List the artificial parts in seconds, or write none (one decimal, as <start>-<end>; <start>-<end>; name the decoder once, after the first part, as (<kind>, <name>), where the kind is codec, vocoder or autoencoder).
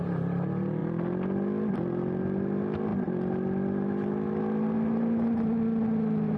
none